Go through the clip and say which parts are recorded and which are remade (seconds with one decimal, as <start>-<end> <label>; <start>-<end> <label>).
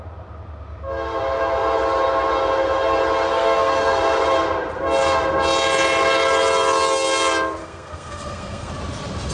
0.0-3.3 recorded; 3.3-4.0 remade; 4.0-7.6 recorded; 7.6-8.7 remade; 8.7-9.3 recorded